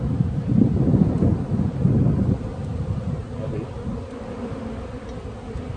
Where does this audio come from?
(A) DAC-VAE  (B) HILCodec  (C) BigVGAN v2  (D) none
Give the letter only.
D